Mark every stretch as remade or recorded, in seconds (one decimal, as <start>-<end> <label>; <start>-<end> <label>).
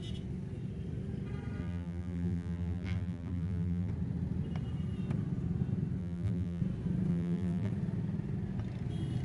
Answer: 0.0-1.6 recorded; 1.6-3.9 remade; 3.9-6.0 recorded; 6.0-6.6 remade; 6.6-7.1 recorded; 7.1-7.7 remade; 7.7-9.2 recorded